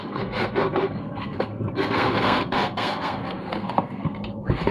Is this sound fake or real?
fake